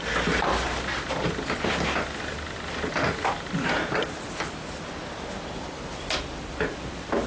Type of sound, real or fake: real